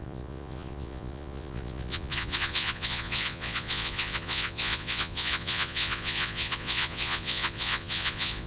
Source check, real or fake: fake